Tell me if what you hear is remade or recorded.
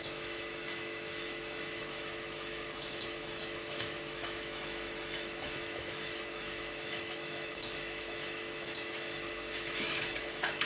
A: remade